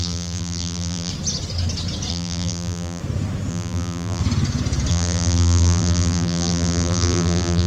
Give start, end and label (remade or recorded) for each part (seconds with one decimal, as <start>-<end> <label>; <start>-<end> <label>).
0.0-1.1 remade; 1.1-2.1 recorded; 2.1-3.0 remade; 3.0-3.5 recorded; 3.5-4.2 remade; 4.2-4.9 recorded; 4.9-7.7 remade